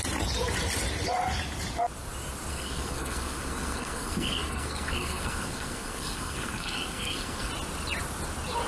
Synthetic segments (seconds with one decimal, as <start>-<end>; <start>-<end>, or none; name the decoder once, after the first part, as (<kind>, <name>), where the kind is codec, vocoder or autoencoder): 2.5-7.5 (codec, SNAC)